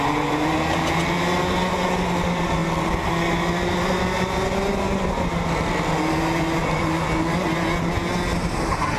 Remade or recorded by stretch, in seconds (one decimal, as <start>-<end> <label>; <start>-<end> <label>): 0.0-9.0 recorded